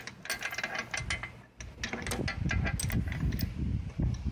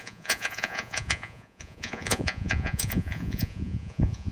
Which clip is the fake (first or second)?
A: second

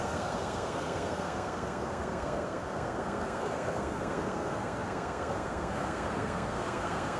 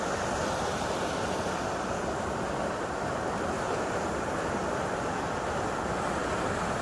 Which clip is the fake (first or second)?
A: first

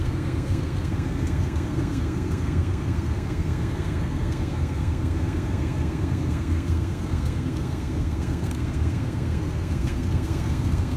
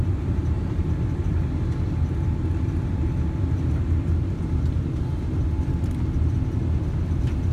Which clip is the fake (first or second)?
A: first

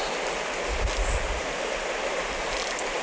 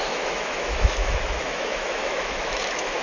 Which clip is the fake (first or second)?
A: second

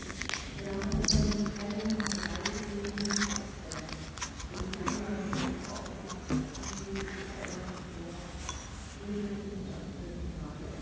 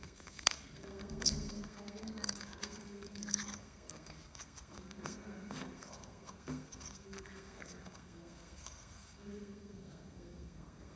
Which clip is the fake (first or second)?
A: second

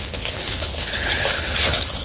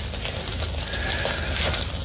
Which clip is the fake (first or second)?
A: first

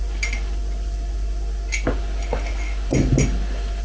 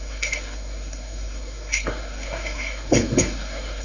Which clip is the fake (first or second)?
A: second